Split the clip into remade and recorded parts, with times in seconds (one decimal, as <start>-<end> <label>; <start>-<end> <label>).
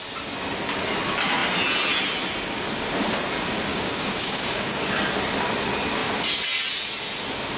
0.0-3.7 recorded; 3.7-4.9 remade; 4.9-7.6 recorded